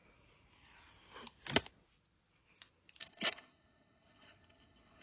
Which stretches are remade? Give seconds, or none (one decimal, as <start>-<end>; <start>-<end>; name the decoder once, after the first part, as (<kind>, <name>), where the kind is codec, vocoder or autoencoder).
3.0-5.0 (codec, HILCodec)